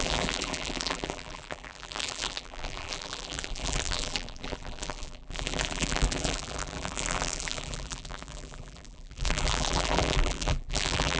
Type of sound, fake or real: fake